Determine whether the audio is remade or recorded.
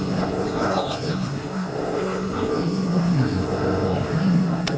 remade